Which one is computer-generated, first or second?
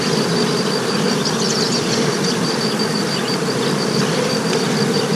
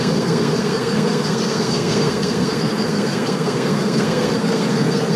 second